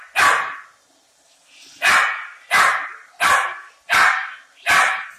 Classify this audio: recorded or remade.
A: recorded